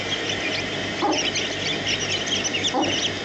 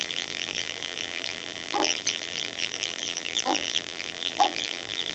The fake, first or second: second